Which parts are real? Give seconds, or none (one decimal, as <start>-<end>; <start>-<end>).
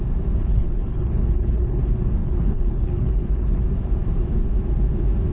0.0-0.4; 1.8-2.2; 3.6-5.3